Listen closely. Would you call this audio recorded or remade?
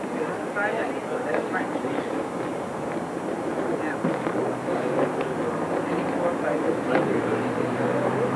recorded